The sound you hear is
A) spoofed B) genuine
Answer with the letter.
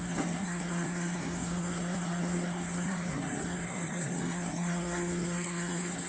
A